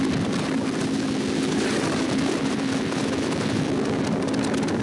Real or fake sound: real